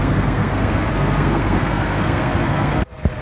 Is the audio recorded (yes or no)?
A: no